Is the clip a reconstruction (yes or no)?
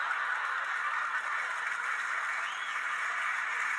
no